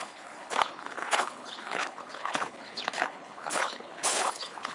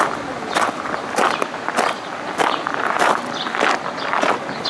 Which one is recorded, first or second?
second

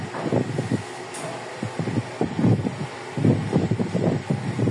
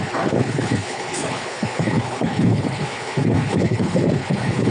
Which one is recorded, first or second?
first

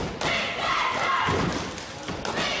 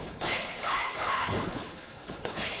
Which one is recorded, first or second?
first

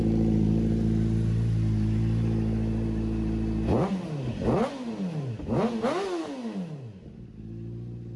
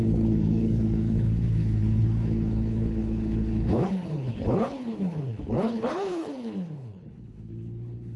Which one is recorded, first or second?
first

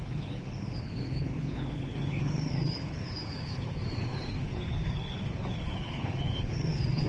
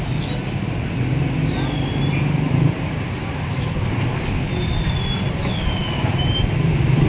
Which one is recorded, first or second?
second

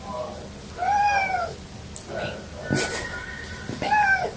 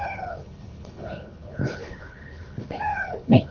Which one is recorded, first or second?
first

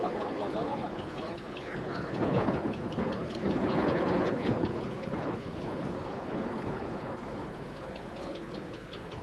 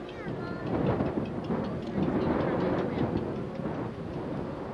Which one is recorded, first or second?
second